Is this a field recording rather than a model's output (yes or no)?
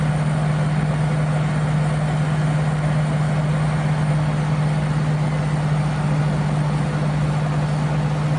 yes